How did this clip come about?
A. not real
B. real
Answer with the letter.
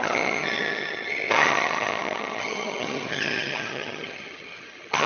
A